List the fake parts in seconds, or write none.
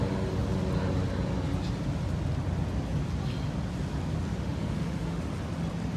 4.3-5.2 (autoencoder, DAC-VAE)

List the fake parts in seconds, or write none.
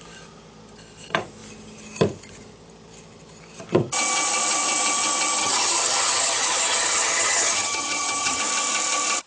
5.4-8.4 (vocoder, HiFi-GAN)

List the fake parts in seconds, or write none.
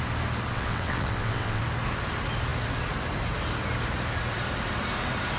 0.5-1.6 (vocoder, WaveNeXt)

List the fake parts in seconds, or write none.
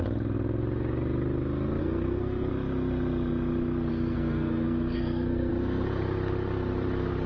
1.8-2.5 (codec, SNAC); 3.9-5.5